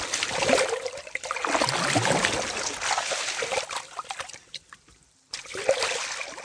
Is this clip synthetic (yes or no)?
no